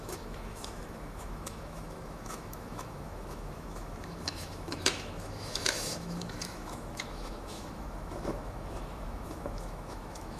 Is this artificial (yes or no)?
yes